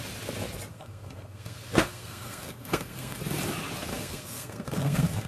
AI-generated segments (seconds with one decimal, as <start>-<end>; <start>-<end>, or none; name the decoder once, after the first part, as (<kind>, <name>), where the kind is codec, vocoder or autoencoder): 0.7-3.2 (codec, SNAC); 3.9-5.3